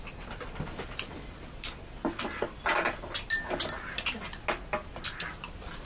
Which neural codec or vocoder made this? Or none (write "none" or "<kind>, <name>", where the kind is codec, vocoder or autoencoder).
none